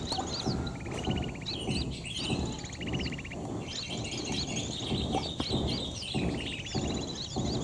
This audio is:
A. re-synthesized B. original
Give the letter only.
B